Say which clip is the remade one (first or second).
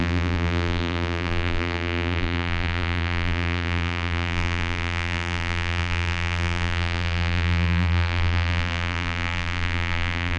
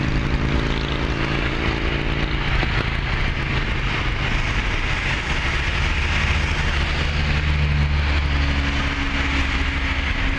first